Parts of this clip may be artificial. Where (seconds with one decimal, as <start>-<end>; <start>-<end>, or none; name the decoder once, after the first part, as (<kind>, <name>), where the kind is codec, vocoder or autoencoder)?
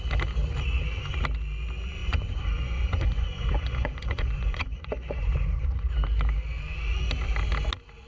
2.0-5.8 (vocoder, Vocos)